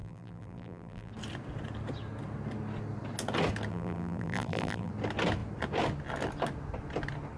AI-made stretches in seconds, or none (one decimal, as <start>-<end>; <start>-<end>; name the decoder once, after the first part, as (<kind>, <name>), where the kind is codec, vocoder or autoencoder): 0.0-1.1 (vocoder, BigVGAN v2); 3.7-4.9